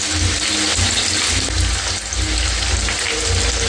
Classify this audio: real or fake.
real